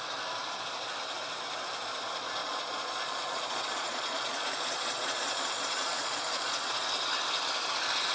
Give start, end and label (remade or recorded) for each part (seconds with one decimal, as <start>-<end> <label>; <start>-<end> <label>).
0.0-2.4 recorded; 2.4-6.9 remade; 6.9-8.1 recorded